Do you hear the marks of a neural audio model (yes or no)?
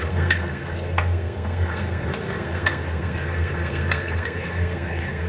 yes